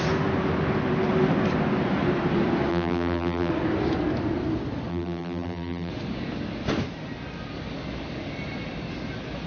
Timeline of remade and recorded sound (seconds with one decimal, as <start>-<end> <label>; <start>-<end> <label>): 0.0-2.7 recorded; 2.7-3.5 remade; 3.5-4.9 recorded; 4.9-5.9 remade; 5.9-9.5 recorded